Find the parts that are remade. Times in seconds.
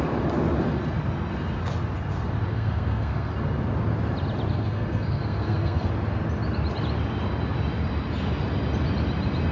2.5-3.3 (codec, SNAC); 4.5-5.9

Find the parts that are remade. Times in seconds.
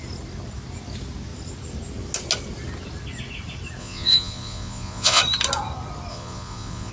3.8-5.2 (vocoder, Vocos); 6.1-6.9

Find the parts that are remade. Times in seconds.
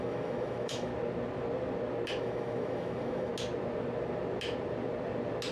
0.0-0.9 (autoencoder, DAC-VAE); 2.2-3.3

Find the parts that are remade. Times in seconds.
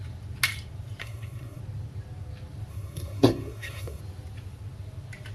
1.0-1.6 (codec, SNAC); 2.7-4.0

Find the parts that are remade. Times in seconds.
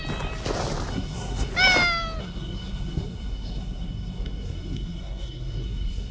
0.9-1.5 (codec, SNAC); 2.2-6.1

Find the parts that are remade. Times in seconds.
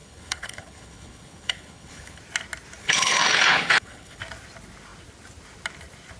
0.0-2.2 (codec, HILCodec); 2.8-4.2